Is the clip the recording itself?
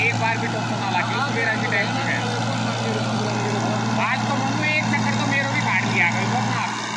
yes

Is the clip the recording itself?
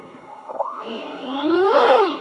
no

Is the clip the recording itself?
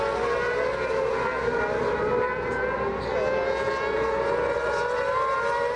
yes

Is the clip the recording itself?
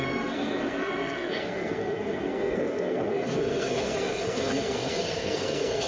no